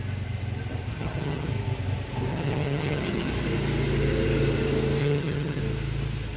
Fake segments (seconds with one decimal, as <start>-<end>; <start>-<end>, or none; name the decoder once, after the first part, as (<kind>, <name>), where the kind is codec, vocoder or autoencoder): 0.9-1.5 (vocoder, HiFi-GAN); 2.3-3.3; 5.0-5.6